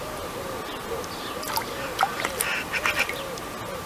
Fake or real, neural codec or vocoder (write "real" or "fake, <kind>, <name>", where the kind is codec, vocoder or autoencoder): real